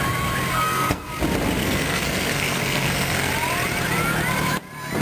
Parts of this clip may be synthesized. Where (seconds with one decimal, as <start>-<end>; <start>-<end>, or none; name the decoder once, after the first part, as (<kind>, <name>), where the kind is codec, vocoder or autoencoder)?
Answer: 0.5-1.1 (codec, SNAC); 1.6-3.3